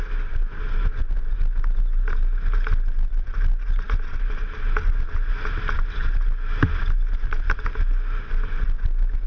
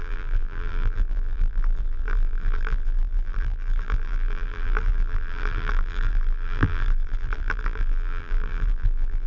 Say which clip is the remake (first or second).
second